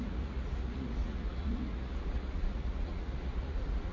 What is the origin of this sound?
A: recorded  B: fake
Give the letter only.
B